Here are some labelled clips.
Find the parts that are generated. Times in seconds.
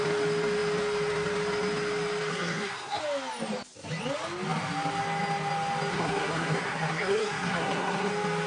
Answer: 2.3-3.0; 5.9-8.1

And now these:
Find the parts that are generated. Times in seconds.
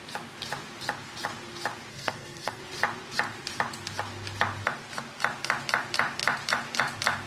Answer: 1.9-2.6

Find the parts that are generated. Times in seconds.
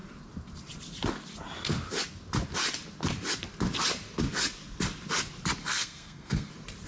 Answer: 5.6-6.5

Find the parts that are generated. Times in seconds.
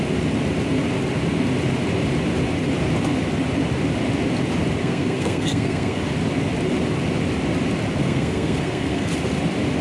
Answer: 4.8-6.0; 8.0-9.1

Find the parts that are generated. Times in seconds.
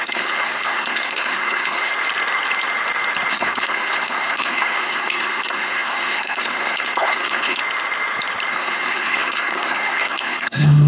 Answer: 0.0-1.9; 3.3-7.6; 8.5-10.9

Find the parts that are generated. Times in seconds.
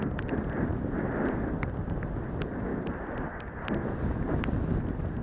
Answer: none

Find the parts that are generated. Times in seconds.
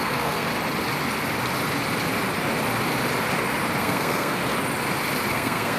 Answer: 0.0-0.5; 3.8-4.4; 5.3-5.8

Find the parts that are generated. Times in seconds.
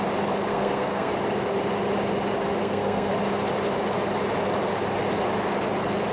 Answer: 0.5-1.1; 2.6-3.1